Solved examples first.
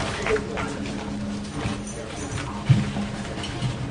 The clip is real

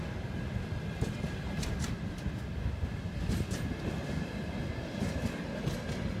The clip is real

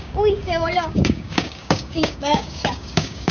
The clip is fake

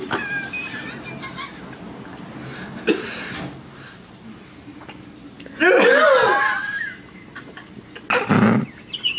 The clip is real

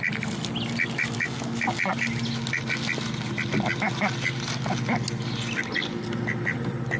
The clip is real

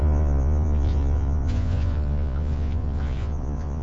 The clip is fake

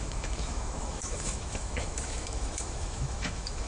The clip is fake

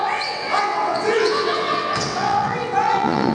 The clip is fake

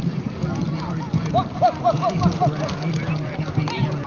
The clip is real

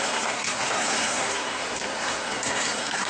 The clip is fake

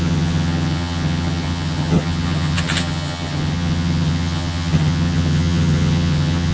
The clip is fake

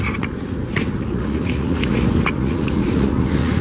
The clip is fake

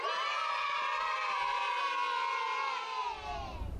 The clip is real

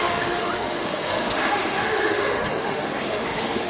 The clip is fake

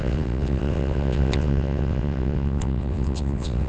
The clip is fake